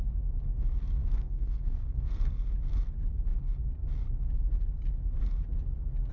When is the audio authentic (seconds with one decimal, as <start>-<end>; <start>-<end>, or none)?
0.0-1.0; 2.5-6.1